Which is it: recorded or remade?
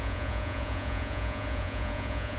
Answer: remade